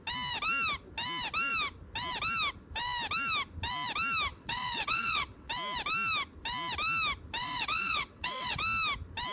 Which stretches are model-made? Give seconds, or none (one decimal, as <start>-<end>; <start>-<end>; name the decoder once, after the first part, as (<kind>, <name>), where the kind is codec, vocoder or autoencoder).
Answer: 4.3-5.5 (vocoder, WaveNeXt); 7.4-8.6